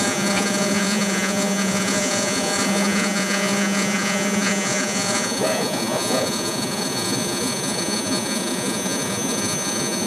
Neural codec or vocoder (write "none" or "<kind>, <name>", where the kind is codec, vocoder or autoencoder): vocoder, Vocos